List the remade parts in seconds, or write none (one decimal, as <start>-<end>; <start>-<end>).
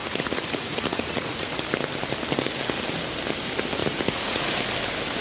0.0-1.5; 3.8-4.5